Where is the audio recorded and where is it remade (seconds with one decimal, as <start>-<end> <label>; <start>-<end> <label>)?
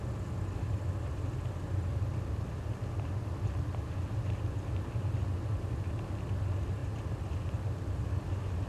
0.0-8.7 recorded